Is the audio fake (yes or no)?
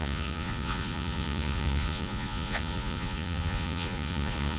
yes